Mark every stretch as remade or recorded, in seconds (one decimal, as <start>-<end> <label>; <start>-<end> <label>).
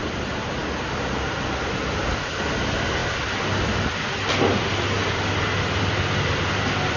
0.0-7.0 recorded